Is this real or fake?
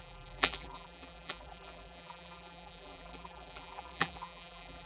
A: fake